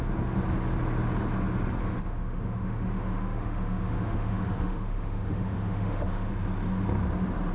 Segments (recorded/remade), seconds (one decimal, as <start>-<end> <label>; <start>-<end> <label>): 0.0-1.8 recorded; 1.8-6.3 remade; 6.3-7.5 recorded